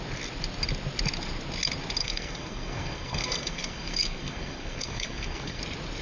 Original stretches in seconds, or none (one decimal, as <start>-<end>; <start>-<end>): 0.0-2.0; 5.6-6.0